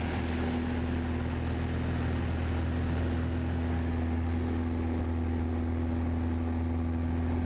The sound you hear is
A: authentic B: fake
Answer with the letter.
A